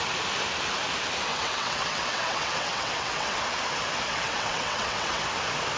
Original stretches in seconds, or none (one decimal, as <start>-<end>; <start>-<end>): 0.0-1.3; 3.4-4.1; 5.2-5.8

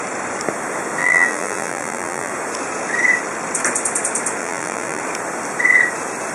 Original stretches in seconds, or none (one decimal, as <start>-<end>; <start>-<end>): 0.0-1.0; 2.3-4.4; 5.0-6.3

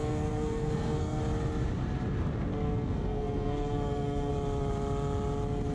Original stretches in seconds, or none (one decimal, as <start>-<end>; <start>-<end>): 1.2-2.5; 4.3-5.7